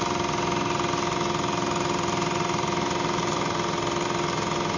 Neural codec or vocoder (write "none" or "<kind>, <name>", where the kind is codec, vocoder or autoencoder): none